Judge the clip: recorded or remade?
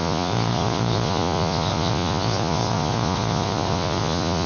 remade